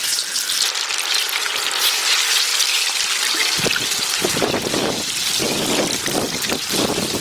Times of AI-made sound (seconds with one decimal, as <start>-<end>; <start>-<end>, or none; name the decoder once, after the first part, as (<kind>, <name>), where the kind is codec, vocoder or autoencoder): none

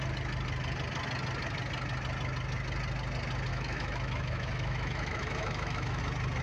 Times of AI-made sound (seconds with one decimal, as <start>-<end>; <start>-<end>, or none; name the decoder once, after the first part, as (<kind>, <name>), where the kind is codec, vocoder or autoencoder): 3.5-6.0 (autoencoder, DAC-VAE)

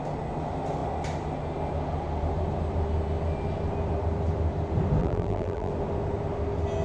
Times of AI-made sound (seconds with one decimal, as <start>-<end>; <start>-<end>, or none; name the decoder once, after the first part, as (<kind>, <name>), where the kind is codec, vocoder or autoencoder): 5.0-5.7 (vocoder, BigVGAN v2)

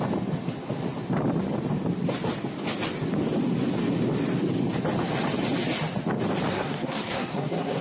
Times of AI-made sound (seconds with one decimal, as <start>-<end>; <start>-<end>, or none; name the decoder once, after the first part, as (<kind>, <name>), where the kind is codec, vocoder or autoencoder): 6.5-7.8 (codec, SNAC)

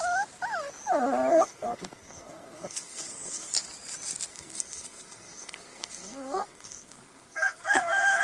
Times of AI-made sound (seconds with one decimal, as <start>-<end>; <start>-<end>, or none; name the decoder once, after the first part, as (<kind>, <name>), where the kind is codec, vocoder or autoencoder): 1.3-3.5 (codec, SNAC); 4.3-8.2

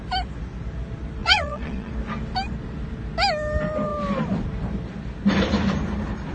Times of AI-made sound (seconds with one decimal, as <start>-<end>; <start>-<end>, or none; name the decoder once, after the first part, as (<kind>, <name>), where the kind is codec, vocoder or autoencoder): 1.2-1.9 (vocoder, Vocos)